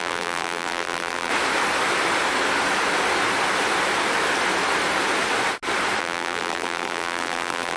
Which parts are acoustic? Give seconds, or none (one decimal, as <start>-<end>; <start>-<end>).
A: 1.3-6.0